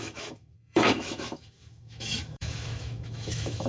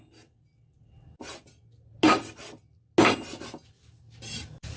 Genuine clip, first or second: second